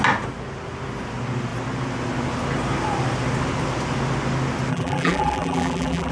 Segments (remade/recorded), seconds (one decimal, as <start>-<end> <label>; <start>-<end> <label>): 0.0-4.7 recorded; 4.7-6.1 remade